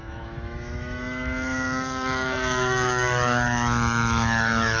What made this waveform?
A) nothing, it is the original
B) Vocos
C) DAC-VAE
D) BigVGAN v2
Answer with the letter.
C